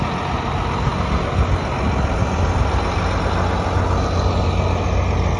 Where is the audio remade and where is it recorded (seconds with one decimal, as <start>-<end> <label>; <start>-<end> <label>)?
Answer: 0.0-5.4 recorded